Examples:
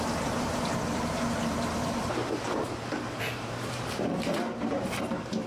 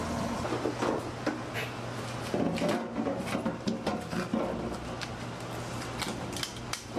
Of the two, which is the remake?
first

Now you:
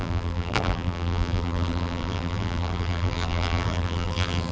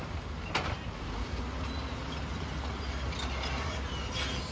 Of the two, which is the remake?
first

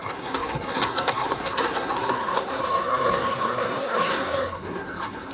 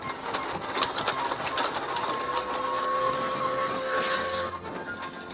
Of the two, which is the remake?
first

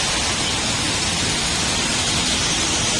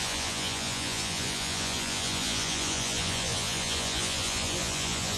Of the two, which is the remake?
second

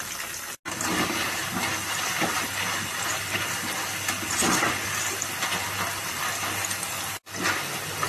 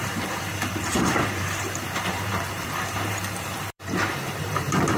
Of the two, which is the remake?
second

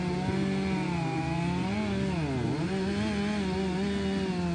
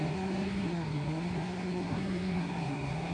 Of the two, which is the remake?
second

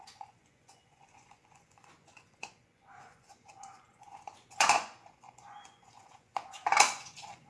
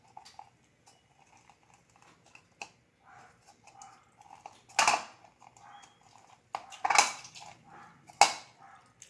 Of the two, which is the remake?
first